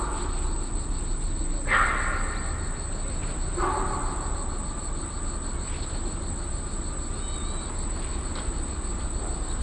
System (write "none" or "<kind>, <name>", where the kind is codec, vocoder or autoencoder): none